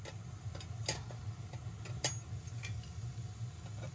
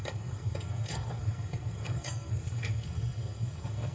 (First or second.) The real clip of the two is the first